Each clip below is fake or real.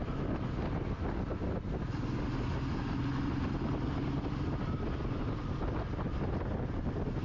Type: real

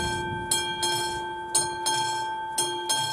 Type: real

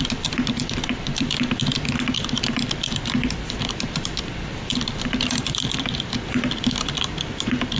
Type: fake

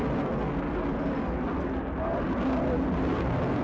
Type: real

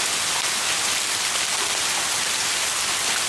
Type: real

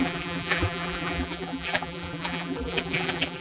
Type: fake